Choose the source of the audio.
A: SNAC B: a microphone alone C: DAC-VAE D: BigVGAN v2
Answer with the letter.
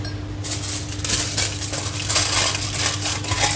B